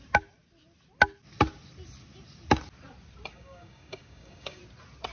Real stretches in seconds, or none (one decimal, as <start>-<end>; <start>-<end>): 0.0-3.3; 4.6-5.1